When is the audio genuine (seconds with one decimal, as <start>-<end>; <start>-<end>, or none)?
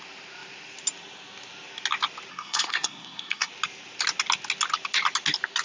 0.0-2.3; 3.5-5.6